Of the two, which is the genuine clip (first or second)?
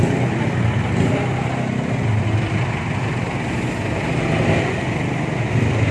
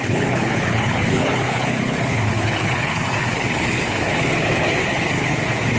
first